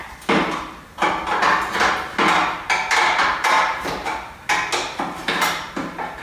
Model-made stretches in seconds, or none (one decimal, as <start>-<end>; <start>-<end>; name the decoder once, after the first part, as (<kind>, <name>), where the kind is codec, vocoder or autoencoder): none